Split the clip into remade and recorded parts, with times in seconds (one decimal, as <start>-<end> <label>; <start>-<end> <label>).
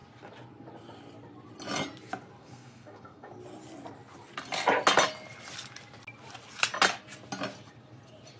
0.0-2.4 recorded; 2.4-3.3 remade; 3.3-8.4 recorded